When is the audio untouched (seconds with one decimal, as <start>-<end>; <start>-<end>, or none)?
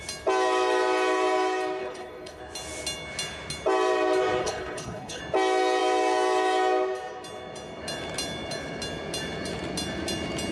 0.0-1.8; 2.4-4.4; 5.2-10.5